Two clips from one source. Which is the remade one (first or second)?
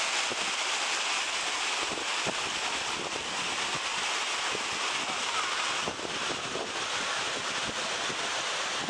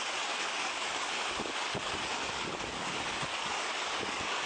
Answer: second